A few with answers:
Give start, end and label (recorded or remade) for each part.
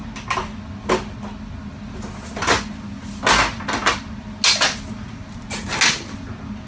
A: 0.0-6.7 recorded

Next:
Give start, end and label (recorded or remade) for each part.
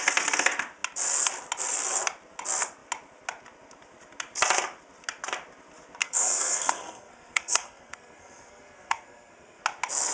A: 0.0-6.0 recorded; 6.0-9.6 remade; 9.6-10.1 recorded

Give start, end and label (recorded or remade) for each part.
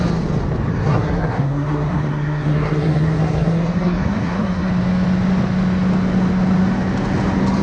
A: 0.0-0.7 recorded; 0.7-4.7 remade; 4.7-7.6 recorded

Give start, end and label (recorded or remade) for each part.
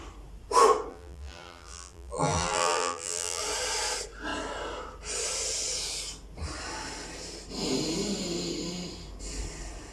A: 0.0-0.9 recorded; 0.9-3.4 remade; 3.4-9.9 recorded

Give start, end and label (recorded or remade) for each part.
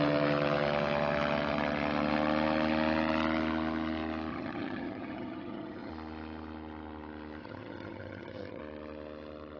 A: 0.0-4.3 recorded; 4.3-5.9 remade; 5.9-7.4 recorded; 7.4-8.6 remade; 8.6-9.6 recorded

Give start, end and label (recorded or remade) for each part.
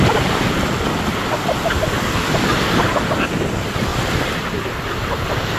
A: 0.0-3.9 recorded; 3.9-4.8 remade; 4.8-5.6 recorded